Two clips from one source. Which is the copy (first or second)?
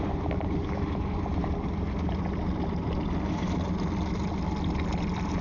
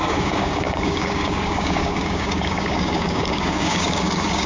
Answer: second